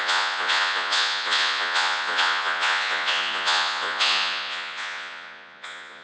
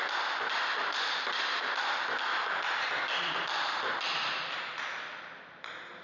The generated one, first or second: first